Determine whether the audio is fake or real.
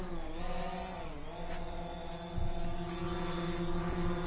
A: real